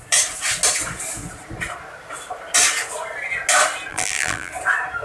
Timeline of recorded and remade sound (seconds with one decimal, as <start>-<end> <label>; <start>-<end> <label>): 0.0-3.9 recorded; 3.9-4.5 remade; 4.5-5.0 recorded